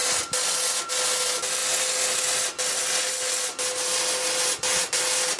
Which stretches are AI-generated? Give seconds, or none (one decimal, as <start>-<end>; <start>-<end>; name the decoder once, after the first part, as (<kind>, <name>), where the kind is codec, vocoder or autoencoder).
none